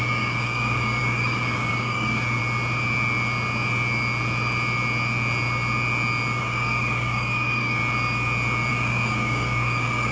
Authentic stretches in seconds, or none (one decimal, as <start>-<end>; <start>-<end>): 2.4-6.4; 7.8-8.7